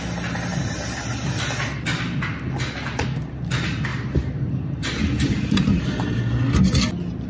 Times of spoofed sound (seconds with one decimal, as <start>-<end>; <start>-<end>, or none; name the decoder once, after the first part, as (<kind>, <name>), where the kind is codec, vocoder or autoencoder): 0.5-1.1 (vocoder, BigVGAN v2); 3.9-6.6